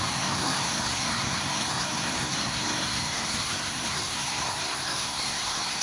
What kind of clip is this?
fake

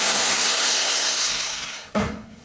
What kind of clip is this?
fake